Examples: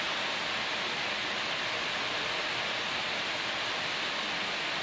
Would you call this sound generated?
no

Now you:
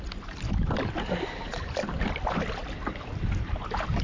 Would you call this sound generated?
no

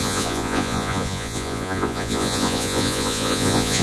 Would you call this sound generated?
yes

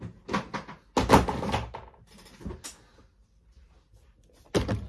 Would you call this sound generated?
no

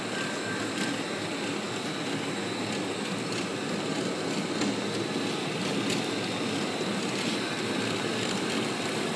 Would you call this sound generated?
no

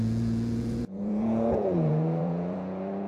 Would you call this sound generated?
yes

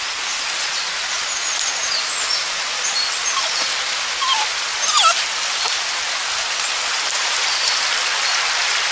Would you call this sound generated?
no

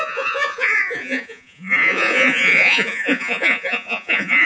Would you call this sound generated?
yes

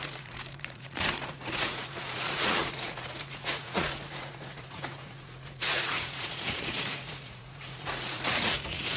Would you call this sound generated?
yes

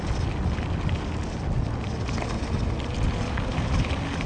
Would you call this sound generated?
no